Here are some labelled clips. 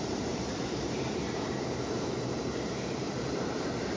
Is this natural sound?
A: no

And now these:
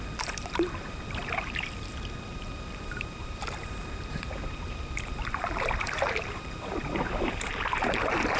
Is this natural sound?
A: no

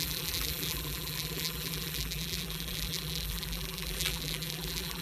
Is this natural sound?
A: no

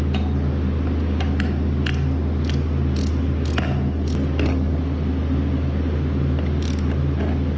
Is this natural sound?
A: yes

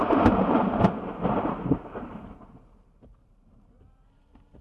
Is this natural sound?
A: no